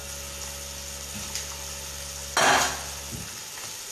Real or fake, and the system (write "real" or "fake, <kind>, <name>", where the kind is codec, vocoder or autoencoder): real